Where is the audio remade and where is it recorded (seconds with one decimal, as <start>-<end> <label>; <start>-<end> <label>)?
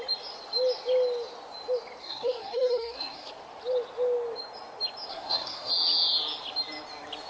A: 0.0-2.0 recorded; 2.0-3.3 remade; 3.3-5.1 recorded; 5.1-5.7 remade; 5.7-7.3 recorded